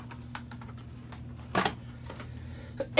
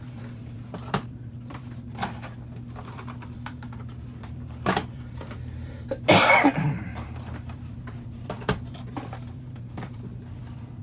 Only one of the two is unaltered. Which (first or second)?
first